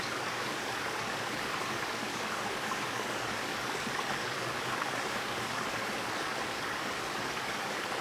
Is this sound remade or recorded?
remade